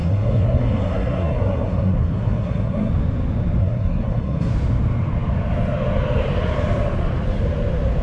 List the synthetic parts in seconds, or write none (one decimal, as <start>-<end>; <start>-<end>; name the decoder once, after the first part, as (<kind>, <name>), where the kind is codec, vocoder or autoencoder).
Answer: 0.0-2.9 (codec, SNAC); 3.6-4.5